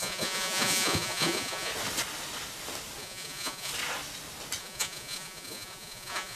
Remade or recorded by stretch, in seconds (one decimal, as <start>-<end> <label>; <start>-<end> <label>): 0.0-1.7 remade; 1.7-3.0 recorded; 3.0-3.7 remade; 3.7-4.6 recorded; 4.6-6.4 remade